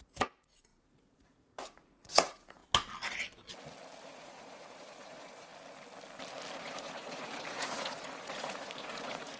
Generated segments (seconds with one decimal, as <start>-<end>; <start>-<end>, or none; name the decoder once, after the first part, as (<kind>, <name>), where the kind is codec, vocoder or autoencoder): 0.0-2.6 (vocoder, Vocos); 4.0-5.5; 6.6-9.4